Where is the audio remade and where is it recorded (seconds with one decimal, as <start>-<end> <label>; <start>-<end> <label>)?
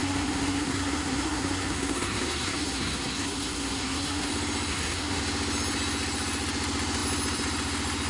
0.0-4.3 remade; 4.3-4.7 recorded; 4.7-5.2 remade; 5.2-8.1 recorded